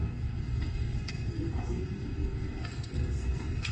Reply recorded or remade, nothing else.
remade